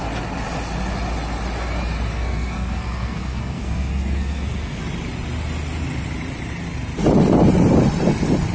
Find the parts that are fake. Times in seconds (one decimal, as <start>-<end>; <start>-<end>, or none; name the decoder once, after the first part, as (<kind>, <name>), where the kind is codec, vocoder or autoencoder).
2.1-4.8 (codec, SNAC)